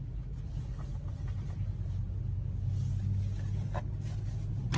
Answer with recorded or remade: recorded